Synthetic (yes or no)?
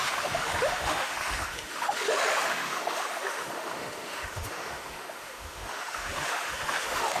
yes